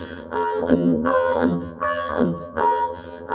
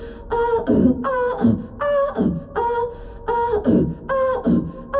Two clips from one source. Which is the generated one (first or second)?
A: first